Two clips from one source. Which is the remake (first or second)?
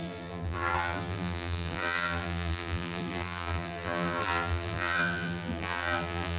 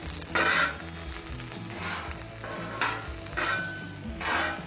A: first